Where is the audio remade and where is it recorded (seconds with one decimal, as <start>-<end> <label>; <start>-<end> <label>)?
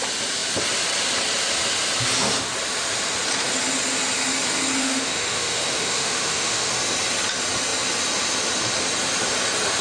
0.0-4.8 recorded; 4.8-6.7 remade; 6.7-9.8 recorded